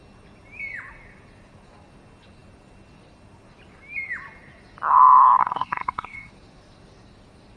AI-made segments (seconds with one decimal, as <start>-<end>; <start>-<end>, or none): 5.4-6.3